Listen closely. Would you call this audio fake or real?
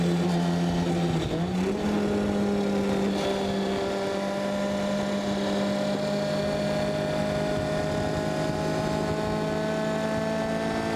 real